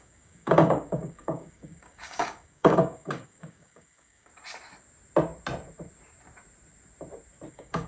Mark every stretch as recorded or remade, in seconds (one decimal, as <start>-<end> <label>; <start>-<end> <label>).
0.0-4.3 remade; 4.3-7.5 recorded; 7.5-7.9 remade

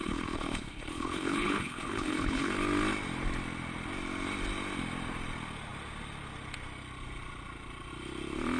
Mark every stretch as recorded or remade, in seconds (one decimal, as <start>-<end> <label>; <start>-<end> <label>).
0.0-2.5 remade; 2.5-8.6 recorded

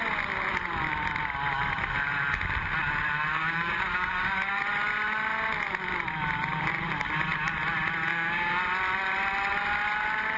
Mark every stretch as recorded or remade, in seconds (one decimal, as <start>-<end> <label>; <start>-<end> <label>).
0.0-3.3 recorded; 3.3-4.6 remade; 4.6-8.1 recorded; 8.1-8.6 remade; 8.6-10.4 recorded

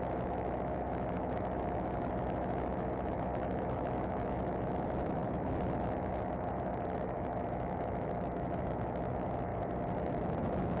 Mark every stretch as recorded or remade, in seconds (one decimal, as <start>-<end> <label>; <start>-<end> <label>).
0.0-9.5 remade; 9.5-10.0 recorded; 10.0-10.8 remade

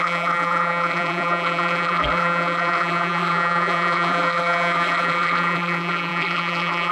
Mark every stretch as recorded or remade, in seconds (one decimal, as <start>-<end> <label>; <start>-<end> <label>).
0.0-6.9 remade

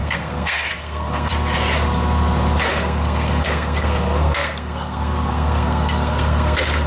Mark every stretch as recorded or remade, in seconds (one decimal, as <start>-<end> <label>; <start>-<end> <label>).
0.0-1.3 remade; 1.3-2.7 recorded; 2.7-6.9 remade

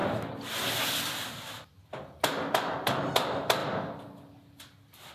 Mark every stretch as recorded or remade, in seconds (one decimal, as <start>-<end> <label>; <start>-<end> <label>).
0.0-5.1 recorded

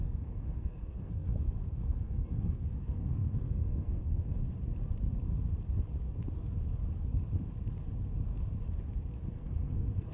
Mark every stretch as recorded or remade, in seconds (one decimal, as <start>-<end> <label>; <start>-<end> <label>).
0.0-4.4 remade; 4.4-9.3 recorded; 9.3-10.1 remade